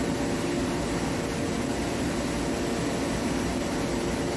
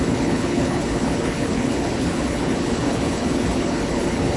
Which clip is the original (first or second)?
first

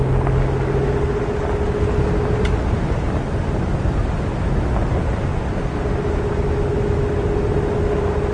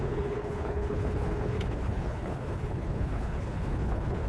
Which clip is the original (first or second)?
first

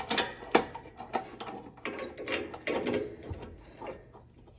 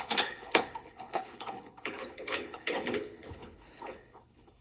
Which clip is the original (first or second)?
first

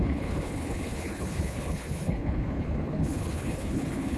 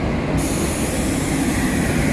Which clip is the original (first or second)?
second